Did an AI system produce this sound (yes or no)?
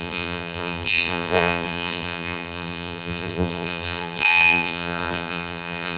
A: yes